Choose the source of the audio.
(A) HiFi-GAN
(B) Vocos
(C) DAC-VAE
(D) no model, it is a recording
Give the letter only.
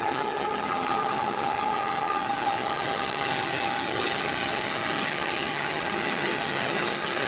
A